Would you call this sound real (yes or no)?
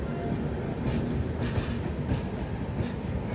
yes